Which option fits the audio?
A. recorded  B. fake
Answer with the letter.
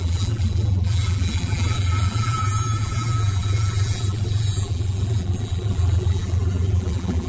B